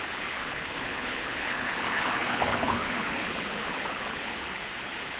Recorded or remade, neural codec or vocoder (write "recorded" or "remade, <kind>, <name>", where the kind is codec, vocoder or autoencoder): remade, codec, HILCodec